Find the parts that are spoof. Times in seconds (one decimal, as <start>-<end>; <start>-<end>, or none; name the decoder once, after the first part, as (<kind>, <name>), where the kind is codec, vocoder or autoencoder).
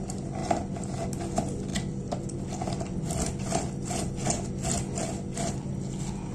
none